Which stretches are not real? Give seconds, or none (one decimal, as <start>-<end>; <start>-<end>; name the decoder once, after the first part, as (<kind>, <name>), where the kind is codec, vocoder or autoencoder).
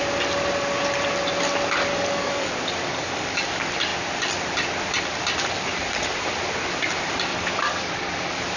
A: 1.9-2.4 (codec, DAC); 2.9-3.4; 7.3-7.9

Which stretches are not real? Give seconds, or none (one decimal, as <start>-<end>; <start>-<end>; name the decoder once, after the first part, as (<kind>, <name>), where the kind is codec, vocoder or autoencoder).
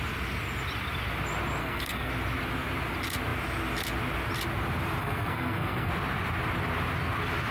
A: 1.6-2.1 (codec, SNAC); 5.0-5.9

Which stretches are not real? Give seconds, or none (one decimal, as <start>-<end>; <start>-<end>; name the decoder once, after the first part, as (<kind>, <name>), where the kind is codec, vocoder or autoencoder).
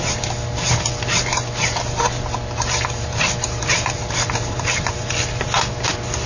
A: 1.3-5.1 (vocoder, BigVGAN v2)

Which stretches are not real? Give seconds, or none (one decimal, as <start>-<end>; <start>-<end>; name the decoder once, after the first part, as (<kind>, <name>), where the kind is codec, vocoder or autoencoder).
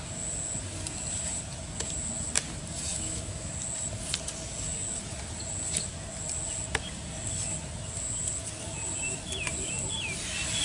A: 2.9-3.5 (autoencoder, DAC-VAE)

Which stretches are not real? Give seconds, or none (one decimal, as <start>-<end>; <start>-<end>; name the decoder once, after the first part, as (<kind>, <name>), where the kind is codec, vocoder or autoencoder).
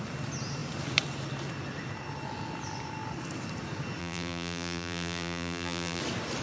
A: 4.0-6.0 (vocoder, BigVGAN v2)